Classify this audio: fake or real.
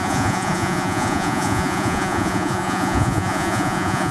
fake